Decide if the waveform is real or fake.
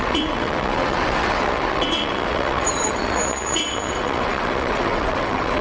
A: fake